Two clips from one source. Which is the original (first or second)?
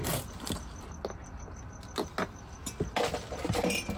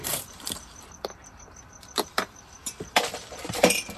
first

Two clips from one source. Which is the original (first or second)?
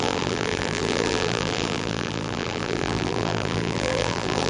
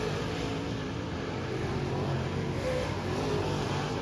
second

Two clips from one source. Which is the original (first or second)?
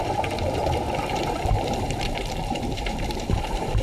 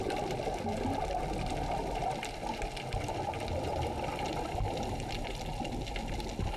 second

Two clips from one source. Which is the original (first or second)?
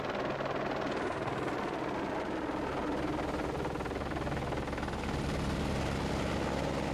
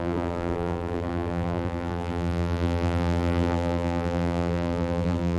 first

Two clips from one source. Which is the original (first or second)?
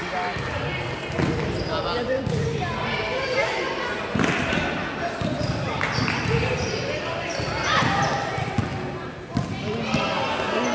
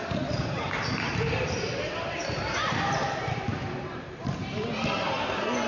first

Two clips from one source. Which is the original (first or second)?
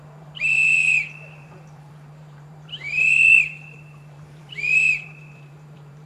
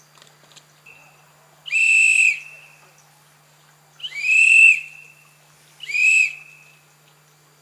second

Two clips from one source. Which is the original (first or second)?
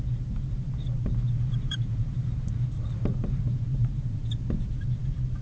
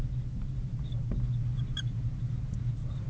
second